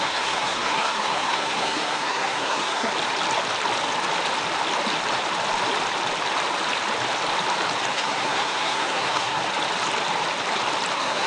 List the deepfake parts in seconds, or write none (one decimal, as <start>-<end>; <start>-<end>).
0.0-2.9; 7.9-9.4; 10.9-11.3

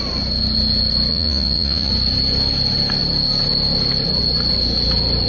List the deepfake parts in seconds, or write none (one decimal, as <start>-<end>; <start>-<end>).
1.1-1.9